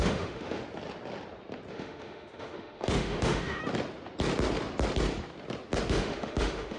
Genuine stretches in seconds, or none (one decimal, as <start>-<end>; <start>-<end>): 0.6-1.7; 3.6-5.9